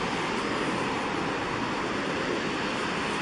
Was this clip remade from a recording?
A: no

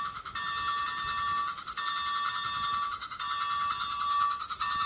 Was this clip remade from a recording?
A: no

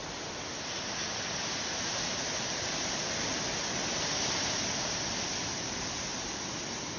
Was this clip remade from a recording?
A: no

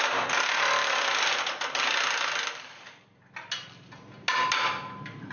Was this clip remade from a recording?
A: no